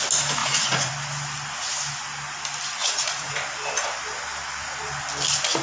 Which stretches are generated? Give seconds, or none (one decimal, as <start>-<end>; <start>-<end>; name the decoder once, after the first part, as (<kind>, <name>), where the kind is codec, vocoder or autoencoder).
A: 0.4-0.9 (vocoder, Vocos); 2.8-3.4

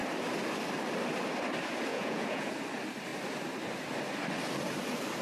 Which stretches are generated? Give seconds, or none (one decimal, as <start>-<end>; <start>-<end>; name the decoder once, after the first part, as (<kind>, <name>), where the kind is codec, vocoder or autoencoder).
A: 1.9-2.5 (vocoder, Vocos)

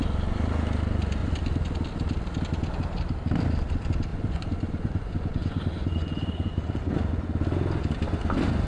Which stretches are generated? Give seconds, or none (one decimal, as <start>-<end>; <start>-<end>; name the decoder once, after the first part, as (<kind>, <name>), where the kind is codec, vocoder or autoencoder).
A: 4.1-7.0 (vocoder, Vocos)

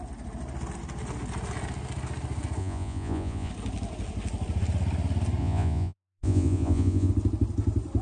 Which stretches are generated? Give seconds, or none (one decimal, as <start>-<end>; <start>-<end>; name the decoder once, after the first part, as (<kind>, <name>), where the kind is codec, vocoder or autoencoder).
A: 2.6-3.5 (vocoder, Vocos); 5.4-7.1

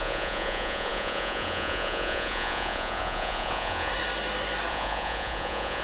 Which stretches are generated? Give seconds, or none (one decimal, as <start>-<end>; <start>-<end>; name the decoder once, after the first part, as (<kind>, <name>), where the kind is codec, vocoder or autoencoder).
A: 0.0-3.9 (vocoder, Vocos); 4.7-5.8

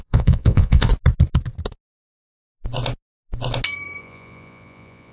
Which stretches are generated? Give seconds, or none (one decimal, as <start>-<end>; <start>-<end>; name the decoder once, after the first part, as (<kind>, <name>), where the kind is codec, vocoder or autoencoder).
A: 0.0-0.9 (vocoder, Vocos); 4.0-5.1

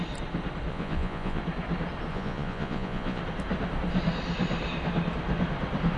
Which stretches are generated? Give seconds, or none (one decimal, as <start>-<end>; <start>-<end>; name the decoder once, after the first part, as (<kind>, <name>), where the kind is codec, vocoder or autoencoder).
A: 0.7-1.4 (vocoder, Vocos); 2.1-3.2